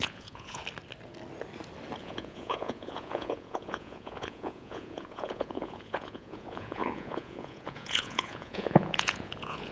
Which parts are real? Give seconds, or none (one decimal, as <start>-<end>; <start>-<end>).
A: 0.6-2.0